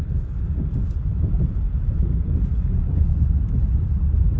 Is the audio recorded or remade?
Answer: recorded